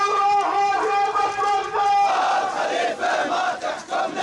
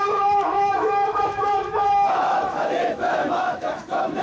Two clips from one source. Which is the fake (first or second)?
second